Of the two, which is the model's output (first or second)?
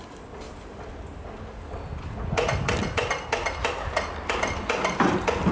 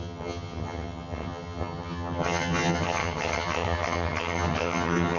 second